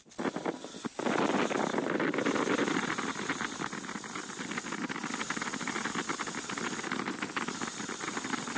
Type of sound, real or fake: real